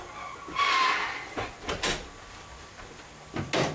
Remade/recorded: recorded